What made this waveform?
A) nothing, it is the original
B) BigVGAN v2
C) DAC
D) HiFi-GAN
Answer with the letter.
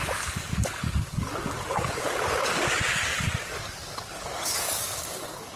C